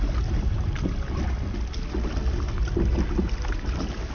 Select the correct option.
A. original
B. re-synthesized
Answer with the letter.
A